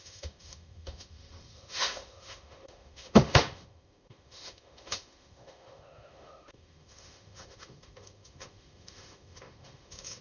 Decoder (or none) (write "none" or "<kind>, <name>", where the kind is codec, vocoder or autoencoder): autoencoder, DAC-VAE